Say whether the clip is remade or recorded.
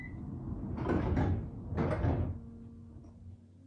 recorded